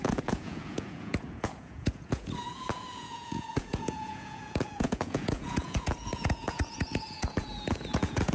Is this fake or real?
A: fake